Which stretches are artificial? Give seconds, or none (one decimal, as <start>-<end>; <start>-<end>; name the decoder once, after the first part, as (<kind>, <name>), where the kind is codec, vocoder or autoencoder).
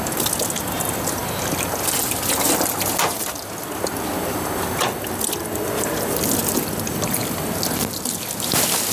none